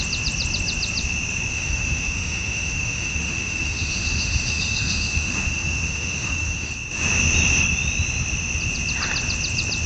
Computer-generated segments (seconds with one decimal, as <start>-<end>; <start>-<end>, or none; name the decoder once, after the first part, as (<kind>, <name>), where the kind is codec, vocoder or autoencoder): 1.5-6.7 (autoencoder, DAC-VAE)